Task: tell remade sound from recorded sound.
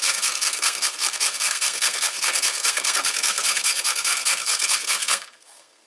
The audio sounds remade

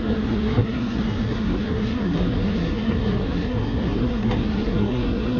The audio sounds remade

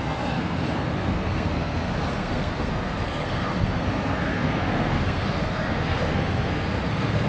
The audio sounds remade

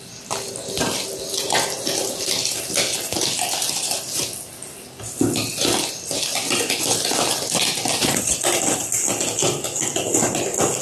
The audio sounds recorded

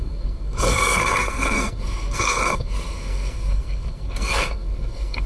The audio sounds remade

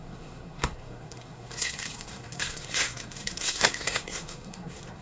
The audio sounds remade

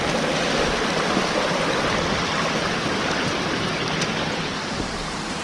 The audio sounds recorded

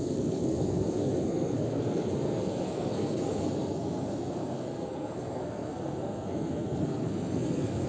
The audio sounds remade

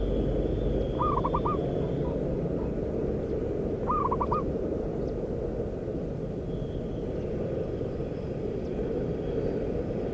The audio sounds recorded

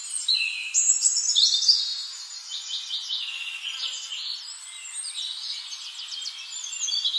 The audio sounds recorded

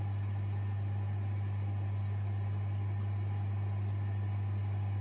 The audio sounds recorded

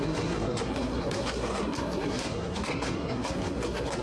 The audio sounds remade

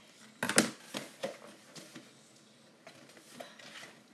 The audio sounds recorded